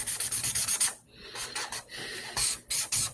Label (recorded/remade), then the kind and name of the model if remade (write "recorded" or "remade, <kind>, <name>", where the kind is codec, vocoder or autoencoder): recorded